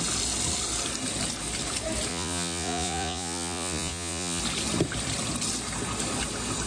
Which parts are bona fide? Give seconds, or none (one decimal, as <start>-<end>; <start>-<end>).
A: 0.0-2.1; 4.4-6.7